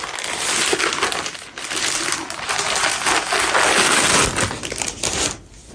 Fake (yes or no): no